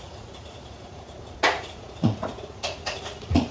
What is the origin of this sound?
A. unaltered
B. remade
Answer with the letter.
B